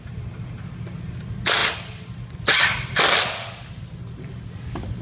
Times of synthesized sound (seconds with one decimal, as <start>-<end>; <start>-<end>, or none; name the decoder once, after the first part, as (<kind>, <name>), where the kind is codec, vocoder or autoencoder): none